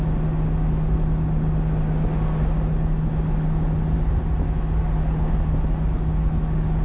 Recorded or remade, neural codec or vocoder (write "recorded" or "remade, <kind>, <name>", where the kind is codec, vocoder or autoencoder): recorded